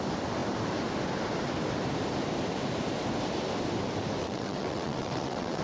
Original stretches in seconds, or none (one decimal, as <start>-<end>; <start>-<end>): 0.0-4.2